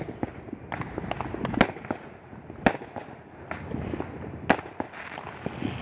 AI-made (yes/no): no